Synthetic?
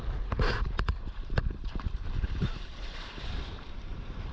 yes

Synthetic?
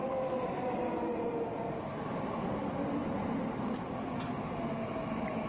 no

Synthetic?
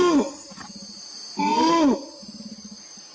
no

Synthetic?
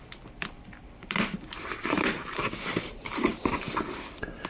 yes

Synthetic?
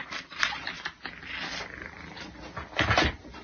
no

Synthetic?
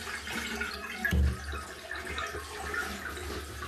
no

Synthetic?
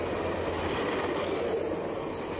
no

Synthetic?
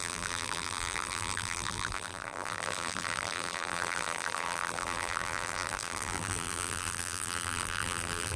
yes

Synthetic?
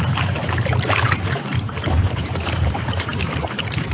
yes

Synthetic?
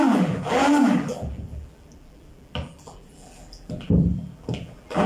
yes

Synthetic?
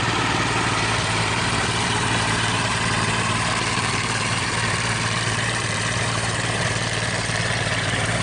yes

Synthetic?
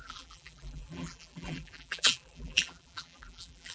yes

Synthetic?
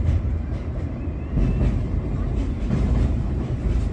yes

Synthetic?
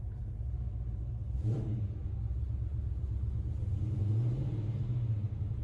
yes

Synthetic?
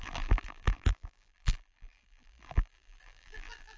yes